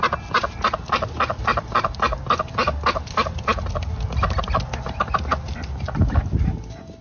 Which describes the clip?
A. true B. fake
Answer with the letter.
A